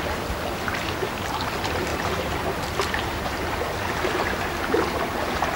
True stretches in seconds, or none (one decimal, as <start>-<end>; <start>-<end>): 0.0-1.9; 3.5-5.6